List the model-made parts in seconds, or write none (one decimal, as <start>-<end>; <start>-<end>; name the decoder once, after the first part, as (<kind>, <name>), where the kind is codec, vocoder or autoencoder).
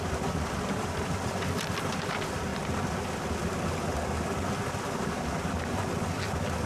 0.0-2.5 (vocoder, BigVGAN v2)